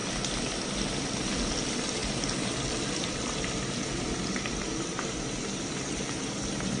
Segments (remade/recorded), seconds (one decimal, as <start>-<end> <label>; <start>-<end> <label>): 0.0-6.8 recorded